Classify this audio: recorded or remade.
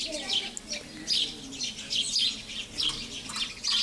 recorded